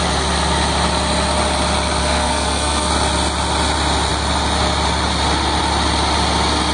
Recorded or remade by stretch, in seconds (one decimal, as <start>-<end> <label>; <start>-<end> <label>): 0.0-2.0 recorded; 2.0-2.9 remade; 2.9-6.7 recorded